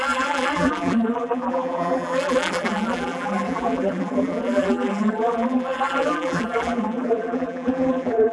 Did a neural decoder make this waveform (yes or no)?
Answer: yes